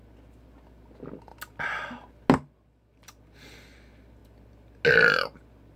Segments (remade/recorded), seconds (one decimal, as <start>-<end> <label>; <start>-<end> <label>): 0.0-5.8 recorded

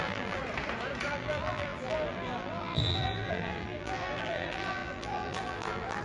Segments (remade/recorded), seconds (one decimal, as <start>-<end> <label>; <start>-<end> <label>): 0.0-0.4 remade; 0.4-1.1 recorded; 1.1-6.0 remade

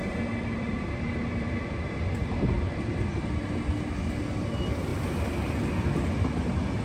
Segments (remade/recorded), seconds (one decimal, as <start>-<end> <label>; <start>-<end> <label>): 0.0-3.0 remade; 3.0-6.8 recorded

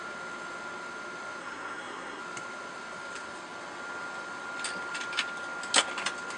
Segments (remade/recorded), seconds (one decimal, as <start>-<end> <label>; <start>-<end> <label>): 0.0-1.4 recorded; 1.4-2.2 remade; 2.2-6.4 recorded

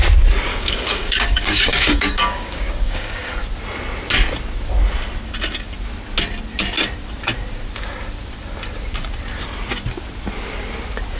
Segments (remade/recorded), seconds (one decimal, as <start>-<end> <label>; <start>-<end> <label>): 0.0-0.5 recorded; 0.5-3.3 remade; 3.3-11.2 recorded

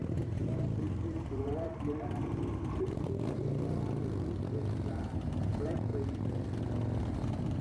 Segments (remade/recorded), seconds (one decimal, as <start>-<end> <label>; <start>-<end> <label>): 0.0-3.4 remade; 3.4-4.7 recorded; 4.7-5.9 remade; 5.9-7.0 recorded; 7.0-7.6 remade

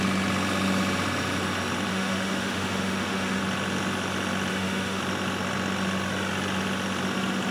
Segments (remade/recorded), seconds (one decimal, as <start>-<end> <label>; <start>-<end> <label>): 0.0-1.9 recorded; 1.9-3.4 remade; 3.4-4.5 recorded; 4.5-5.0 remade; 5.0-7.5 recorded